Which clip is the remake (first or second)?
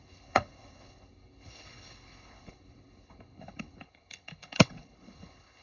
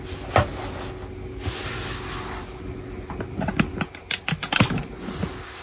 first